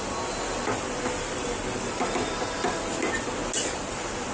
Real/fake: real